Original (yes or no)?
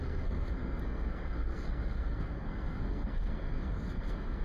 no